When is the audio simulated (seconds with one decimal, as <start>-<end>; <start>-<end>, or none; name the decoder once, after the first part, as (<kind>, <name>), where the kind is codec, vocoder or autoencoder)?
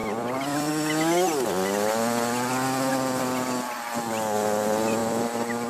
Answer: 0.0-0.7 (vocoder, BigVGAN v2); 2.9-3.9; 5.0-5.7